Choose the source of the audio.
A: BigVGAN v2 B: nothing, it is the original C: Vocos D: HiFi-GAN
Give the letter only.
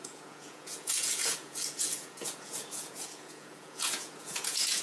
C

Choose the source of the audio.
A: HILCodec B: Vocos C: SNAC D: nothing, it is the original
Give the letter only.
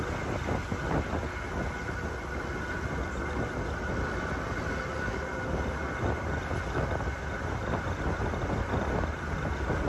D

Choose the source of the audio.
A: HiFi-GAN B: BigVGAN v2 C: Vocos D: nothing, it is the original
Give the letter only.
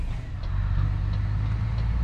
D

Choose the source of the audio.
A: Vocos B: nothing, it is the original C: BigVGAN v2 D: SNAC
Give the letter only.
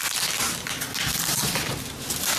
B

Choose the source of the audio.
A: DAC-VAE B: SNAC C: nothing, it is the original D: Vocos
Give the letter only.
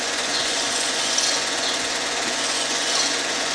D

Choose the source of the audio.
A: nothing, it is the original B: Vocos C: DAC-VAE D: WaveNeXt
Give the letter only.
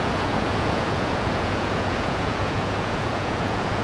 B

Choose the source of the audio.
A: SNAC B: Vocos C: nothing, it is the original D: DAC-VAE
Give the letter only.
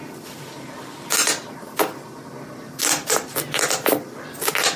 C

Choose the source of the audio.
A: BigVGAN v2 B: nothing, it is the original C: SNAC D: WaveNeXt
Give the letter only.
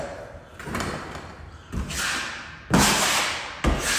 B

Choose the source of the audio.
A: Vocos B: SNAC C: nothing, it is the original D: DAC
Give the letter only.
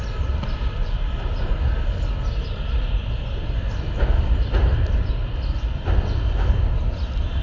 C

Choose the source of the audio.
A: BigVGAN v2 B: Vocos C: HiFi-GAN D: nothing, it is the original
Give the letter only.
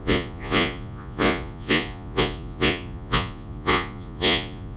B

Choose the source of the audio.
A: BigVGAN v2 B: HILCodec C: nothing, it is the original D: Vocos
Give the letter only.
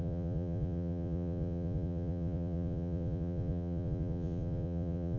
D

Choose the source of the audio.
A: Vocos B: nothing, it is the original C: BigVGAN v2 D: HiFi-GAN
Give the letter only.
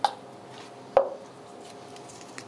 B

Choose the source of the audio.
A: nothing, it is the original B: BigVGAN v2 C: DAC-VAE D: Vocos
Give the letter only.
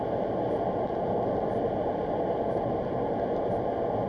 A